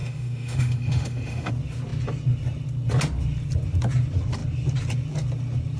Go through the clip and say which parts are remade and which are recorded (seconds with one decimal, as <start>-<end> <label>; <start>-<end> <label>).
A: 0.0-1.5 remade; 1.5-5.8 recorded